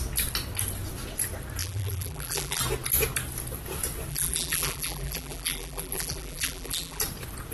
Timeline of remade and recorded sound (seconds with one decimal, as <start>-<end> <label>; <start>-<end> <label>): 0.0-1.6 recorded; 1.6-2.6 remade; 2.6-4.1 recorded; 4.1-7.0 remade; 7.0-7.5 recorded